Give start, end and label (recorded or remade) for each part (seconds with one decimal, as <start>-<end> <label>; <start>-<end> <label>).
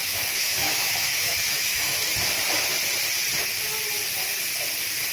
0.0-2.1 remade; 2.1-5.1 recorded